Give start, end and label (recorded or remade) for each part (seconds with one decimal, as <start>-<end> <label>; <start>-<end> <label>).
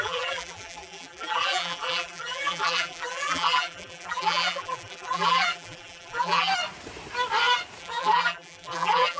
0.0-6.5 remade; 6.5-7.8 recorded; 7.8-9.2 remade